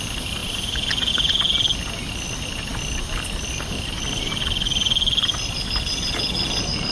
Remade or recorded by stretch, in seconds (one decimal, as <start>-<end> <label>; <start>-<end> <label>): 0.0-6.9 recorded